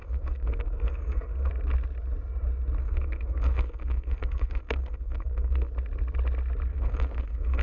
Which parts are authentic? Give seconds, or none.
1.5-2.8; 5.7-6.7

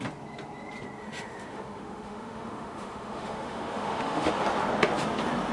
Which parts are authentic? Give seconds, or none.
0.0-1.0; 4.3-5.5

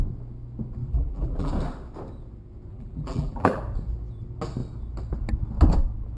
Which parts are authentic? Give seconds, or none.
0.0-0.8; 1.5-2.7; 3.6-6.2

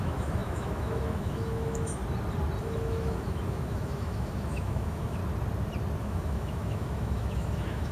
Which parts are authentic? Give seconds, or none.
2.0-2.6; 5.2-6.0

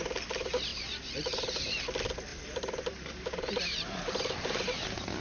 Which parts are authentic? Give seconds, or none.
0.0-0.7; 1.8-2.3; 3.6-5.2